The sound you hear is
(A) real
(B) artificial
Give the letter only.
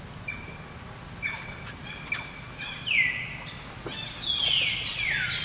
A